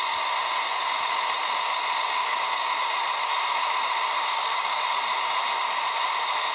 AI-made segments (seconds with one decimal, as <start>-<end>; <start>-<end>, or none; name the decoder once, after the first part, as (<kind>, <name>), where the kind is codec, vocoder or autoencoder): 2.2-2.7 (codec, DAC); 4.3-4.8